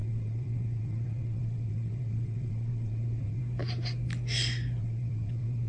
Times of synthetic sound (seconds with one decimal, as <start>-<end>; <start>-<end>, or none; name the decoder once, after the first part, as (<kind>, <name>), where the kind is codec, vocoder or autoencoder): 0.0-3.4 (vocoder, WaveNeXt); 4.8-5.7